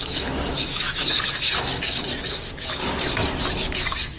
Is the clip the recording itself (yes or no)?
no